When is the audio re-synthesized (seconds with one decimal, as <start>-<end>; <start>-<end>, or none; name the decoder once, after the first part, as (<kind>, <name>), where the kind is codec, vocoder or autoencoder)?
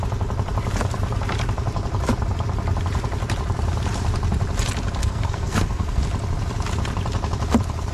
5.0-6.0 (codec, SNAC)